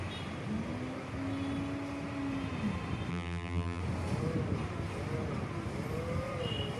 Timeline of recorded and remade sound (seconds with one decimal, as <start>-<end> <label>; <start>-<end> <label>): 0.0-3.1 recorded; 3.1-3.8 remade; 3.8-6.8 recorded